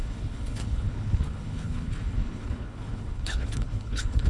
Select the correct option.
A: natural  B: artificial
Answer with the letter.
B